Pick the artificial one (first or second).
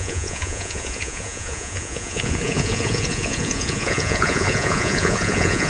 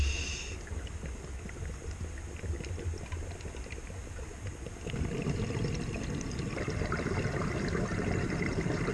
first